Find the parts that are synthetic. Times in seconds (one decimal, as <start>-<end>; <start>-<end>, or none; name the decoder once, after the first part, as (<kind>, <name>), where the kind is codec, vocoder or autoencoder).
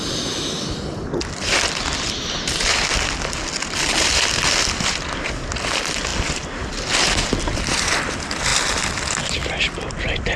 none